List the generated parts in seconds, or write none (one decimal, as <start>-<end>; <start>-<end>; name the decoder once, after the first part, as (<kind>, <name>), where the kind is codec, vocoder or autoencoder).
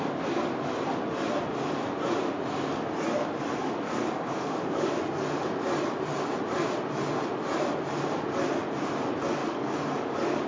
3.6-5.0 (codec, DAC); 9.4-10.5